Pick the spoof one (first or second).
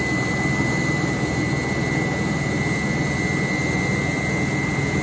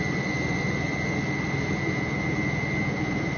second